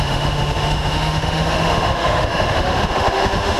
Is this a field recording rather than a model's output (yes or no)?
no